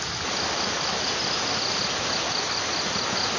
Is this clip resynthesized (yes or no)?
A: no